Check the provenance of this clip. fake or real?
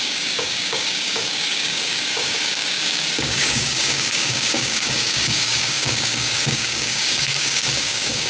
fake